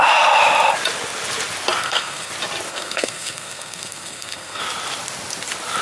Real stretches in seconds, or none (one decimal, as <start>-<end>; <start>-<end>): 0.0-1.8; 2.3-2.7; 4.6-5.8